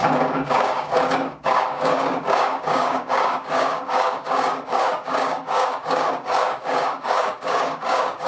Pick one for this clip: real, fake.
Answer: fake